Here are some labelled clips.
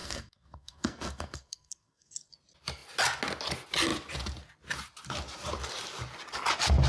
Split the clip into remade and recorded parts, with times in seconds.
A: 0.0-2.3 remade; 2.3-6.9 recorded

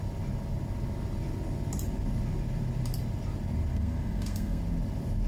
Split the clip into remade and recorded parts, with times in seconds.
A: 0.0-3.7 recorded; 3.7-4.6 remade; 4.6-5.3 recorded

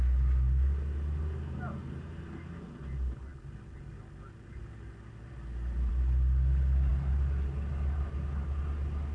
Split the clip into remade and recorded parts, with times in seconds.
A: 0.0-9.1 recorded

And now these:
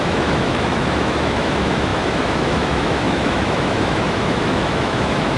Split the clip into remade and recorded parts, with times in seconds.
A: 0.0-5.4 remade